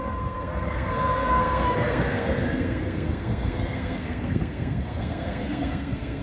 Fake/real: fake